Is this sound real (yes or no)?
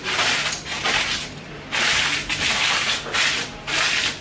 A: yes